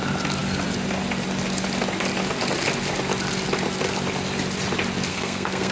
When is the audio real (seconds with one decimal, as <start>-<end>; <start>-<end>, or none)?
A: 0.0-5.1